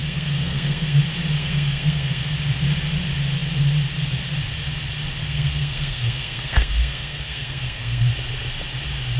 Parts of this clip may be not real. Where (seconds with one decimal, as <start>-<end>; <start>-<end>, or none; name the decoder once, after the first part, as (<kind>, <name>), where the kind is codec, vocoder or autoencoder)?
0.0-1.0 (codec, SNAC); 1.4-2.3; 5.2-8.1